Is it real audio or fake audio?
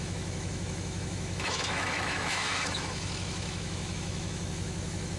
fake